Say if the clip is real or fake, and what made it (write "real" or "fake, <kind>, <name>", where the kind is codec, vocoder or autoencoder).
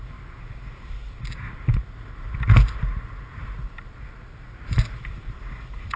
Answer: real